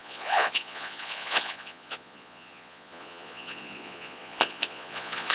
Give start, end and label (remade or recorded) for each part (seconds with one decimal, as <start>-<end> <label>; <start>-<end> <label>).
0.0-5.3 remade